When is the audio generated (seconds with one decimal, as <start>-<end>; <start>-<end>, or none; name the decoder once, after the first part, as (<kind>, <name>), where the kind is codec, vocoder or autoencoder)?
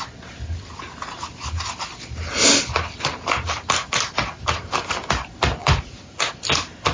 5.6-6.3 (vocoder, Vocos)